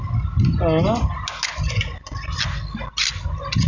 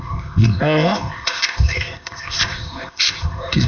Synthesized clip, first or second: second